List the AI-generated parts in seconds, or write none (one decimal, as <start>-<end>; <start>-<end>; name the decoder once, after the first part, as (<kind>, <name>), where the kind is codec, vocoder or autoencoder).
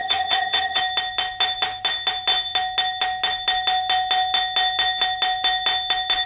0.0-0.8 (vocoder, HiFi-GAN)